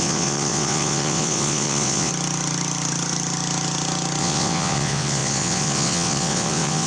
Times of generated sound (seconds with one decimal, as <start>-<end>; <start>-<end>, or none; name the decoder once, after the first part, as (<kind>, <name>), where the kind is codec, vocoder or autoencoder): 0.0-2.1 (vocoder, WaveNeXt); 4.2-6.9